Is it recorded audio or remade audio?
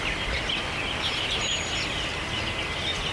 recorded